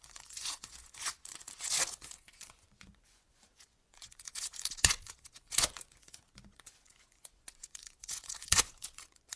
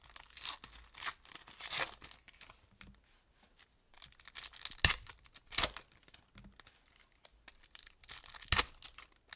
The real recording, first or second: second